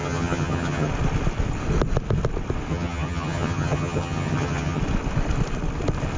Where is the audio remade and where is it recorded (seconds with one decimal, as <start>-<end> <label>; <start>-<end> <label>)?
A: 0.0-0.9 remade; 0.9-2.7 recorded; 2.7-4.8 remade; 4.8-6.2 recorded